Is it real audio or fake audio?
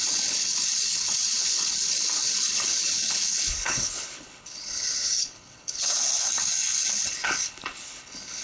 fake